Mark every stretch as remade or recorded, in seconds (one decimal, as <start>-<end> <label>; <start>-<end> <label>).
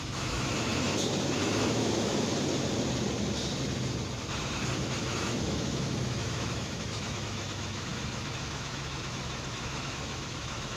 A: 0.0-2.3 remade; 2.3-5.0 recorded; 5.0-10.8 remade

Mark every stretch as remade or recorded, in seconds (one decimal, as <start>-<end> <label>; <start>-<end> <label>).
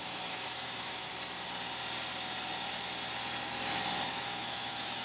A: 0.0-1.1 remade; 1.1-4.1 recorded; 4.1-5.0 remade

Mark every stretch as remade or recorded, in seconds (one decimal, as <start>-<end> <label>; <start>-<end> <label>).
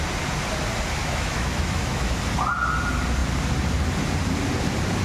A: 0.0-1.0 recorded; 1.0-2.2 remade; 2.2-5.0 recorded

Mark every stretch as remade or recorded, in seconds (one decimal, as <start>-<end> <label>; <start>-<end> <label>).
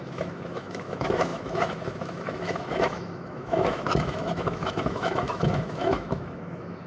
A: 0.0-6.9 remade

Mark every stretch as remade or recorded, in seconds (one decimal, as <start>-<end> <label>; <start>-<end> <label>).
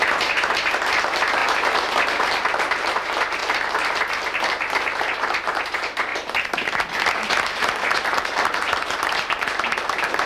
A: 0.0-10.3 recorded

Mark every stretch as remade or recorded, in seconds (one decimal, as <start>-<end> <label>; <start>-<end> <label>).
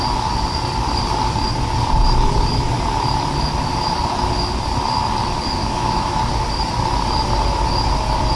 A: 0.0-5.6 recorded; 5.6-6.2 remade; 6.2-8.4 recorded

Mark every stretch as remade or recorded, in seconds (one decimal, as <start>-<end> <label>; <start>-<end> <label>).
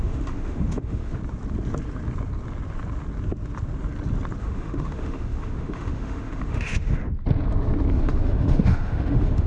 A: 0.0-1.2 remade; 1.2-4.4 recorded; 4.4-7.0 remade; 7.0-7.9 recorded; 7.9-9.5 remade